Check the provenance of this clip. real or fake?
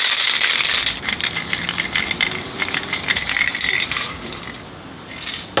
real